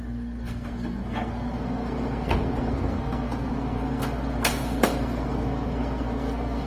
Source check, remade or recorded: remade